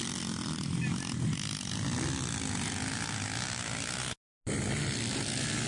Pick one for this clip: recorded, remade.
recorded